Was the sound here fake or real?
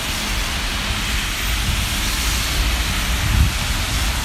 real